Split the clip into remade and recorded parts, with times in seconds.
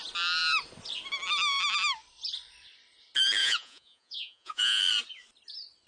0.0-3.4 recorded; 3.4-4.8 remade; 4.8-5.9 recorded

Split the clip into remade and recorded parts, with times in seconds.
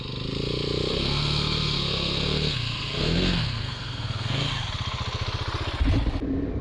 0.0-0.9 recorded; 0.9-4.5 remade; 4.5-6.6 recorded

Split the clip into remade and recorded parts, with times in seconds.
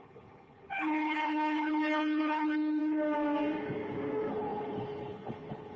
0.0-2.8 remade; 2.8-4.3 recorded; 4.3-5.8 remade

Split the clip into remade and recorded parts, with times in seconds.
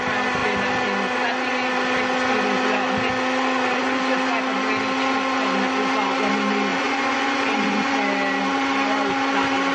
0.0-6.7 recorded; 6.7-7.9 remade; 7.9-9.7 recorded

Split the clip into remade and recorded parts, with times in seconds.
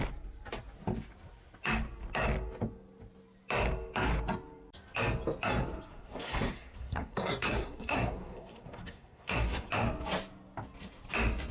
0.0-5.9 recorded; 5.9-9.7 remade; 9.7-11.5 recorded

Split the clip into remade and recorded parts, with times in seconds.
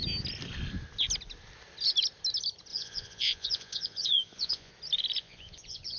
0.0-2.7 recorded; 2.7-4.7 remade; 4.7-5.2 recorded; 5.2-6.0 remade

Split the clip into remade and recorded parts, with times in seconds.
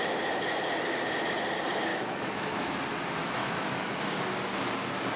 0.0-1.9 recorded; 1.9-2.8 remade; 2.8-3.4 recorded; 3.4-4.2 remade; 4.2-5.2 recorded